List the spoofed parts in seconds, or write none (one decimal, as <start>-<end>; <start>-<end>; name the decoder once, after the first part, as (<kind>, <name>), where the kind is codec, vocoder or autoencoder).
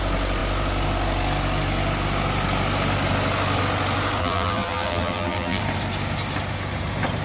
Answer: 4.2-5.6 (vocoder, BigVGAN v2)